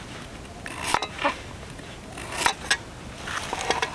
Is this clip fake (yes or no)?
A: no